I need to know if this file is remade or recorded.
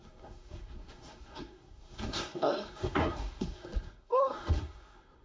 remade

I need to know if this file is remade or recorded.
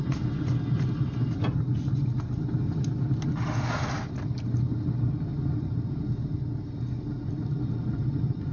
recorded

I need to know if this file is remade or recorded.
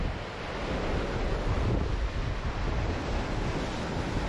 recorded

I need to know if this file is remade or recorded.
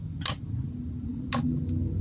recorded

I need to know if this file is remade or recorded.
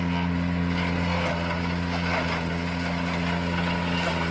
recorded